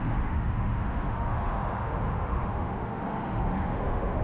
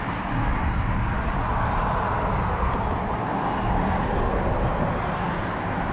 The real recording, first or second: second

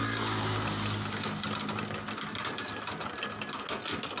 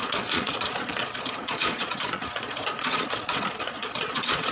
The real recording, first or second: first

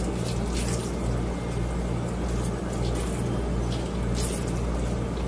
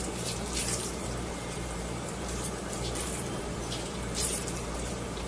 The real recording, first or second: first